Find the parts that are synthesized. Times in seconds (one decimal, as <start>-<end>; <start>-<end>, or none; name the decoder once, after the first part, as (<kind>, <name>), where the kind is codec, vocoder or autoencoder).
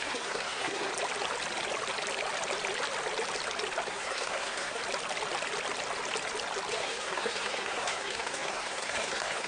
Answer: 0.0-0.9 (codec, SNAC); 3.9-4.8; 6.7-9.5